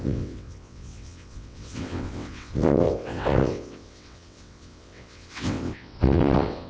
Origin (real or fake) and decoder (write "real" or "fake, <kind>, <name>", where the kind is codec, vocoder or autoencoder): fake, vocoder, WaveNeXt